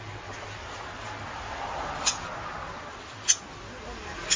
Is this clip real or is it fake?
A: real